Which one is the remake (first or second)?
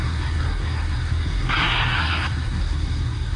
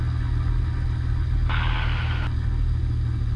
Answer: first